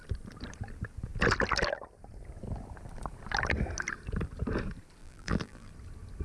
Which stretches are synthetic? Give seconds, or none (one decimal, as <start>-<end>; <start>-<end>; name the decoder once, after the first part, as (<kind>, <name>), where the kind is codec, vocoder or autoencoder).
5.0-5.7 (vocoder, BigVGAN v2)